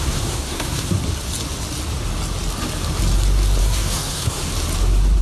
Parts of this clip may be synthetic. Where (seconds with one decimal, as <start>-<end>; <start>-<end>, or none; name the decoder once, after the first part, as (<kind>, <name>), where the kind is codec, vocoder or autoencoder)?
0.0-1.0 (codec, SNAC); 3.6-4.5